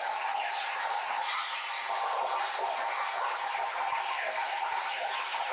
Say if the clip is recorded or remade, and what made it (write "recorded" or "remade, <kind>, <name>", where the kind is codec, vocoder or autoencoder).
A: recorded